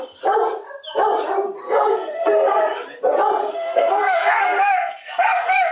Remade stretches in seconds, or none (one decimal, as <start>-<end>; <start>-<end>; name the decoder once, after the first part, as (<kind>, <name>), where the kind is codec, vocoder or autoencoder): 1.6-2.6 (codec, SNAC); 3.4-5.7